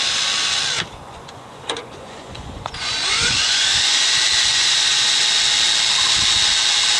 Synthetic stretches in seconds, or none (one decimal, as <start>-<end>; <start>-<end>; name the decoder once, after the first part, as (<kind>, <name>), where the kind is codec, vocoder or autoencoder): 1.0-4.1 (vocoder, Vocos); 4.5-5.2